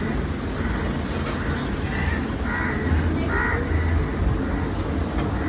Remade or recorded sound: recorded